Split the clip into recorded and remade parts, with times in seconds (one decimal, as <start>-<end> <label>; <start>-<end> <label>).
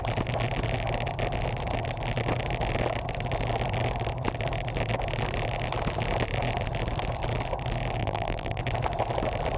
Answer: 0.0-8.0 recorded; 8.0-8.6 remade; 8.6-9.6 recorded